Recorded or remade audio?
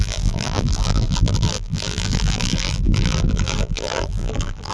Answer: remade